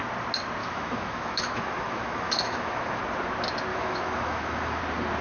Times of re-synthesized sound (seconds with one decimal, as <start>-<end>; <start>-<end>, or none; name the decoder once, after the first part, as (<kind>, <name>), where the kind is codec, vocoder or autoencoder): 0.6-3.0 (autoencoder, DAC-VAE); 3.7-4.8